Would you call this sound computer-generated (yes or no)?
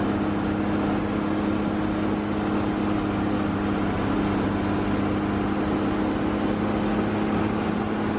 no